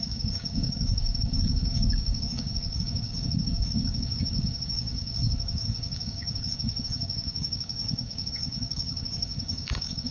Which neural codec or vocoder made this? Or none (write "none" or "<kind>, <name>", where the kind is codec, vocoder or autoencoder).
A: codec, DAC